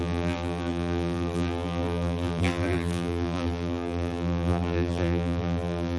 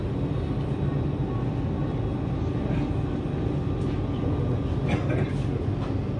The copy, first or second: first